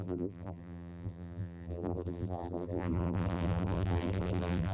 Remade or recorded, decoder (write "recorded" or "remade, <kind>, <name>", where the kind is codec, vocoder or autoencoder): remade, vocoder, BigVGAN v2